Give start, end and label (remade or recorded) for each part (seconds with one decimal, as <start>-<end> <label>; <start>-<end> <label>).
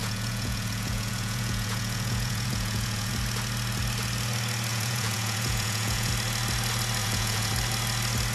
0.0-3.1 remade; 3.1-4.7 recorded; 4.7-6.1 remade; 6.1-7.0 recorded; 7.0-7.5 remade; 7.5-8.3 recorded